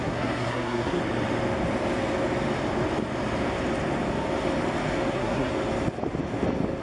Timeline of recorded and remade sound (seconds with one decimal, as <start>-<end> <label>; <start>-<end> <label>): 0.0-1.0 remade; 1.0-5.1 recorded; 5.1-5.5 remade; 5.5-6.8 recorded